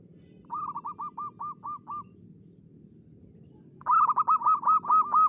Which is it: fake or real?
real